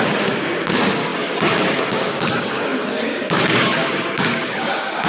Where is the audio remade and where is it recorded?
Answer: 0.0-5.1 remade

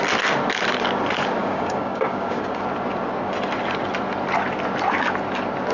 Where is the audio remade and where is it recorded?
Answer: 0.0-1.4 recorded; 1.4-2.6 remade; 2.6-5.7 recorded

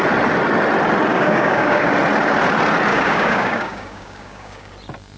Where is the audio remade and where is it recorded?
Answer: 0.0-1.1 recorded; 1.1-1.9 remade; 1.9-2.9 recorded; 2.9-4.7 remade; 4.7-5.2 recorded